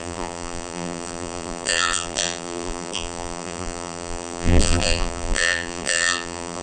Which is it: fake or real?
fake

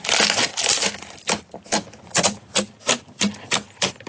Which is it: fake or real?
real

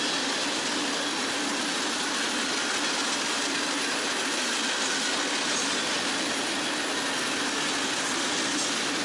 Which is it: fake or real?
real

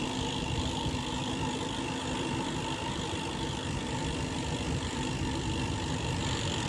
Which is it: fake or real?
fake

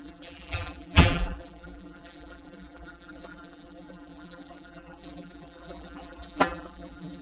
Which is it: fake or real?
fake